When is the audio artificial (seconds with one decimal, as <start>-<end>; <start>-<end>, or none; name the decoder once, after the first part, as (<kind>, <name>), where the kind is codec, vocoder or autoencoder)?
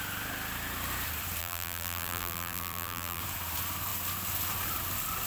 1.4-3.2 (vocoder, BigVGAN v2)